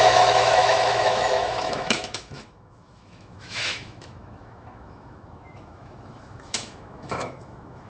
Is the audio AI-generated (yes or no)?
yes